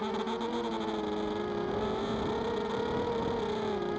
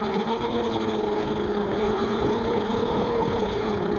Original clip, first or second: first